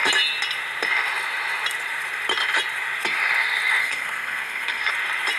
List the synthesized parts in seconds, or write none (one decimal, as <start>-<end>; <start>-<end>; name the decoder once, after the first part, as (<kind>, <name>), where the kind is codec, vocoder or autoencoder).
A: 3.8-4.9 (codec, SNAC)